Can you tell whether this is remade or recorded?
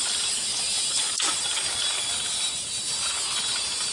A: recorded